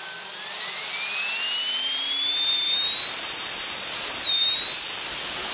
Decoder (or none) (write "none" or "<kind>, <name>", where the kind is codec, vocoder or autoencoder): none